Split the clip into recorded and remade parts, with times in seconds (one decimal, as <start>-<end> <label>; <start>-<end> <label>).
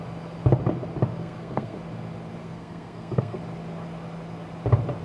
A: 0.0-1.2 recorded; 1.2-1.8 remade; 1.8-2.4 recorded; 2.4-3.4 remade; 3.4-5.0 recorded